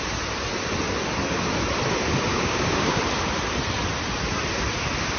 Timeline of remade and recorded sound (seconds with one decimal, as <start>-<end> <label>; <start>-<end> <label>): 0.0-2.3 recorded; 2.3-3.0 remade; 3.0-5.2 recorded